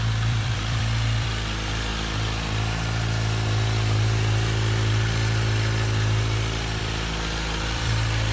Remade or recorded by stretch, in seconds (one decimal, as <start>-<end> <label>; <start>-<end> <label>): 0.0-1.9 remade; 1.9-6.8 recorded; 6.8-8.3 remade